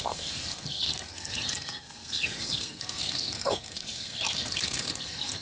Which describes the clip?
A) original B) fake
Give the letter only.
B